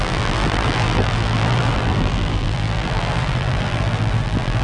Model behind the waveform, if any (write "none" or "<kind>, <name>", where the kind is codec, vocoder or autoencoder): vocoder, BigVGAN v2